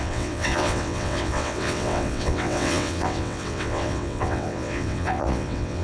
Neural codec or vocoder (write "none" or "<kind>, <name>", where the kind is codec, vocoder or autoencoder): vocoder, WaveNeXt